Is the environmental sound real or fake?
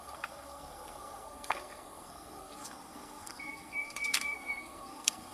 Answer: fake